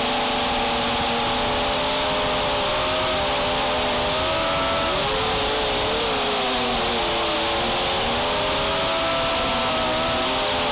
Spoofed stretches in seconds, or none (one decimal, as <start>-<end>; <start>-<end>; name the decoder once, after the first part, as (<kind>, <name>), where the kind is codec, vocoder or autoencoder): none